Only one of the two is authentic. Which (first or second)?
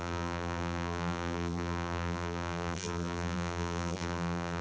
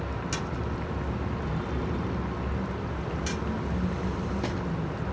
second